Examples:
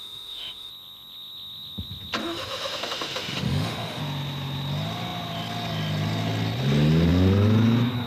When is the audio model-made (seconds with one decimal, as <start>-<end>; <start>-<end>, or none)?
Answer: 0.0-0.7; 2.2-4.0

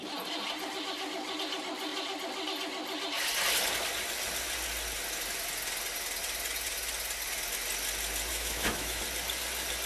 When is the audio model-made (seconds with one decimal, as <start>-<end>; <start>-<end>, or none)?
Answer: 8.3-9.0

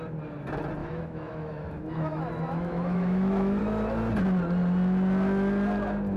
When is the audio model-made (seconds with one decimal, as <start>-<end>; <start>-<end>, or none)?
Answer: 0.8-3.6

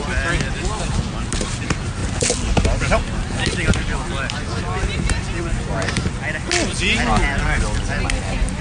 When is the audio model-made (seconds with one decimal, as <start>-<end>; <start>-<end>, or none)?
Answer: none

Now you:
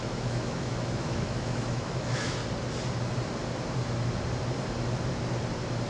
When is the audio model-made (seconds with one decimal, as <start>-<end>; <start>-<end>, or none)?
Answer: 0.0-2.4

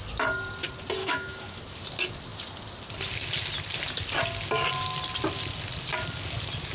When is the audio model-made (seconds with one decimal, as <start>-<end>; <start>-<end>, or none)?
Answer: 1.0-1.6